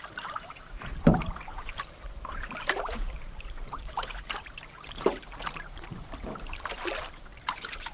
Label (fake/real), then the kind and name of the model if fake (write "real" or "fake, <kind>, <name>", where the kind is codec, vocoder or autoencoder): fake, vocoder, BigVGAN v2